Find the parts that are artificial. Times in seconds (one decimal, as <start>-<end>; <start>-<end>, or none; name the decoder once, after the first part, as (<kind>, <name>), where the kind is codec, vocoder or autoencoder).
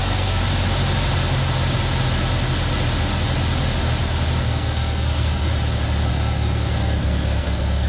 0.0-0.4 (codec, SNAC); 4.4-5.5; 6.1-7.9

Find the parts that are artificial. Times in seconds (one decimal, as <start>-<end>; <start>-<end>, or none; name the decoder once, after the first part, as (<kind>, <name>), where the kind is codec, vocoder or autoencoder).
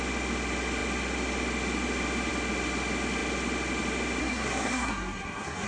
4.2-5.7 (codec, SNAC)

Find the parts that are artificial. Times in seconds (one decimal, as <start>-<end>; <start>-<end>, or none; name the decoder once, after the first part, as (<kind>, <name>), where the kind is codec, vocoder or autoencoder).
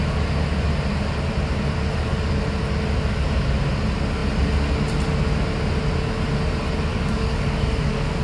6.9-8.2 (codec, DAC)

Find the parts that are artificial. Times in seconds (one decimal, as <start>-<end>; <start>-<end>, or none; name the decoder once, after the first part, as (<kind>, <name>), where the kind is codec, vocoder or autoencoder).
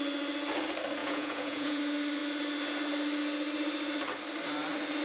1.0-1.8 (vocoder, Vocos)